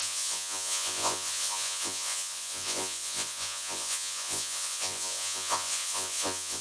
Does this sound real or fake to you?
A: fake